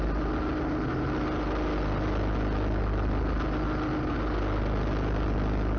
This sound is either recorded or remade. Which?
recorded